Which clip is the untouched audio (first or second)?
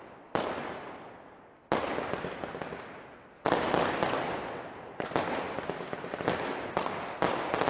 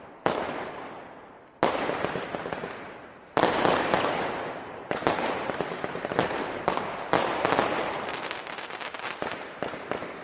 first